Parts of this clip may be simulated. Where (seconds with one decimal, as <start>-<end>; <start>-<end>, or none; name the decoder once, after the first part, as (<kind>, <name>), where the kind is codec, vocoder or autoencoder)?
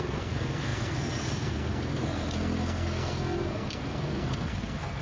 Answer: 0.0-5.0 (codec, SNAC)